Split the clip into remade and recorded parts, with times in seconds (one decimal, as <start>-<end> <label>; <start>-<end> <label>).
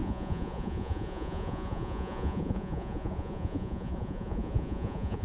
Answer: 0.0-5.2 remade